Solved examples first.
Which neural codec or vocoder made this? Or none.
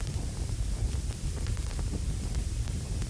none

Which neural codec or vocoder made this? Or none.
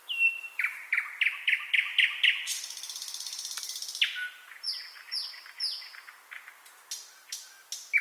none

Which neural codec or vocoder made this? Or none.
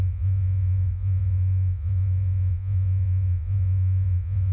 vocoder, Vocos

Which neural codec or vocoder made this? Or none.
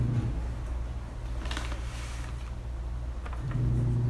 none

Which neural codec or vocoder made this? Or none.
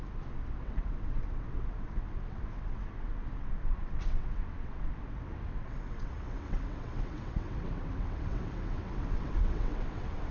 vocoder, WaveNeXt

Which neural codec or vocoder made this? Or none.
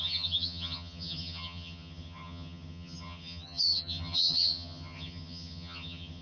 vocoder, HiFi-GAN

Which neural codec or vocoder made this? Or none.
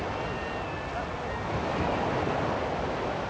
none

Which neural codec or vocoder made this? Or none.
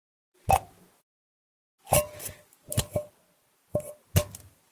none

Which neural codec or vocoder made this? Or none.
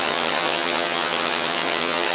vocoder, HiFi-GAN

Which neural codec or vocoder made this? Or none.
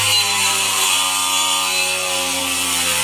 vocoder, BigVGAN v2